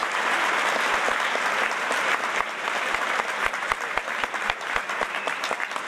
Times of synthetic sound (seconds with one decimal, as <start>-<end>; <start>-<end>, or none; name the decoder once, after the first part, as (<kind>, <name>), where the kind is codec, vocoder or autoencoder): none